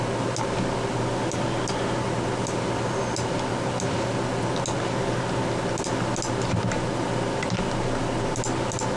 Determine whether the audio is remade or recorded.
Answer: recorded